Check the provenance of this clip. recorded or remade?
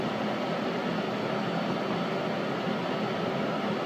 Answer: recorded